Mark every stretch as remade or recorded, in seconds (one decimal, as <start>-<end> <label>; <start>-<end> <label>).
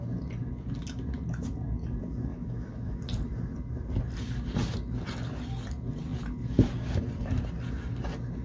0.0-2.3 recorded; 2.3-3.0 remade; 3.0-8.4 recorded